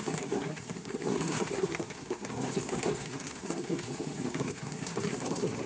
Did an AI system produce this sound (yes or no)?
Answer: yes